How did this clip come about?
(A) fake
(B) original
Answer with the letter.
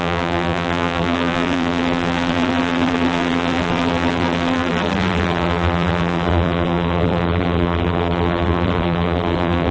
A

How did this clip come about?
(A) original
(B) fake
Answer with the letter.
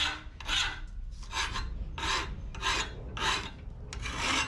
A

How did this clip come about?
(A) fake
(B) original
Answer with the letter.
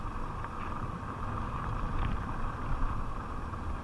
B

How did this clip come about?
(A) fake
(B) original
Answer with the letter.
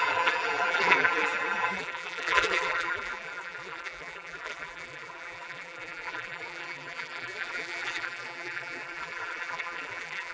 A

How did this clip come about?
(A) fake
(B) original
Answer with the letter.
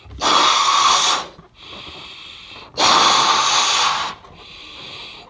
B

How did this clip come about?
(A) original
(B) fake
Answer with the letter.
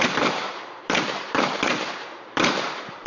B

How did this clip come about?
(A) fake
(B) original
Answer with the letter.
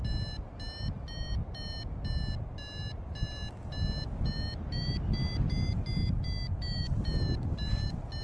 B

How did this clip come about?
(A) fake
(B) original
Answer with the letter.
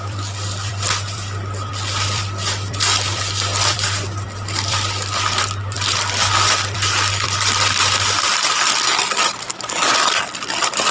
A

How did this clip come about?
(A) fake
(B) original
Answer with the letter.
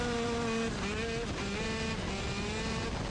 B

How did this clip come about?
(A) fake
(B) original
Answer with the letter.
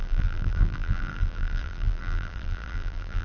A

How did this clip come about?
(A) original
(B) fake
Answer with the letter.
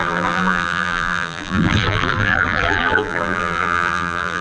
B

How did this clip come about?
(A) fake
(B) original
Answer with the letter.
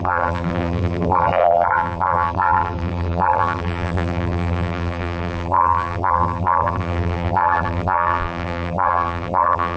A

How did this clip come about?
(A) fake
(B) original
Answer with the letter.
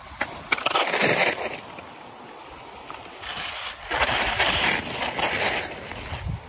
A